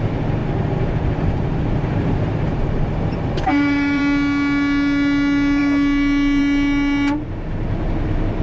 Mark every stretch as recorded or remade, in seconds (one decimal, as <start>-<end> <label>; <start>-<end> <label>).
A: 0.0-0.4 recorded; 0.4-4.0 remade; 4.0-8.4 recorded